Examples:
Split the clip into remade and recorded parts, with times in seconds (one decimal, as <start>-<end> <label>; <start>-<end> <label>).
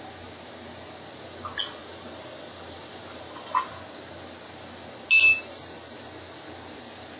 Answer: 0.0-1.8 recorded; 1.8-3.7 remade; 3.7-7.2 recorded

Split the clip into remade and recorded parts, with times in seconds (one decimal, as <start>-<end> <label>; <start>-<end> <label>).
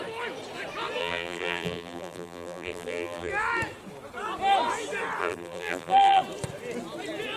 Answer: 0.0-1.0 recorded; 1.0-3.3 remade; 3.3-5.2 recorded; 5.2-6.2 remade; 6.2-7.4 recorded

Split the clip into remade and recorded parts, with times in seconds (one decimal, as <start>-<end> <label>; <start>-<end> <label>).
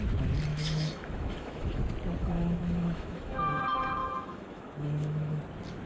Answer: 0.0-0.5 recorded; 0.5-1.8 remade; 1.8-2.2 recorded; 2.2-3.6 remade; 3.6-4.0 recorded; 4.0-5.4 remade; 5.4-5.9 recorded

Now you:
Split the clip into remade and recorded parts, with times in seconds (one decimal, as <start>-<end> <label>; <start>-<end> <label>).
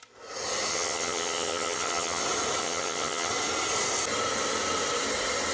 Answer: 0.0-0.7 recorded; 0.7-2.2 remade; 2.2-2.6 recorded; 2.6-3.3 remade; 3.3-5.5 recorded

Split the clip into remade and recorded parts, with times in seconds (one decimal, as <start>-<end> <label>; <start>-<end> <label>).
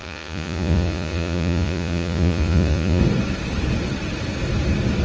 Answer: 0.0-3.0 remade; 3.0-5.0 recorded